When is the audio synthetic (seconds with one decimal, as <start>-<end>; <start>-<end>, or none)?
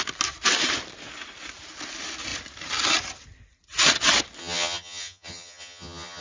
4.4-6.2